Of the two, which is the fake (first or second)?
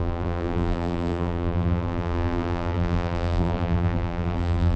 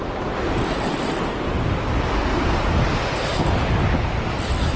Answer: first